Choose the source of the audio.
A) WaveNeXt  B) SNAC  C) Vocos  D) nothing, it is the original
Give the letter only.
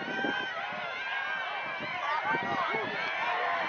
D